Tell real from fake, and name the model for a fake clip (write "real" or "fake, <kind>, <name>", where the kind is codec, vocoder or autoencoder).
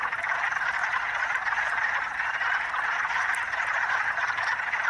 real